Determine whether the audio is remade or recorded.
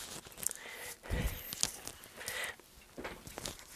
recorded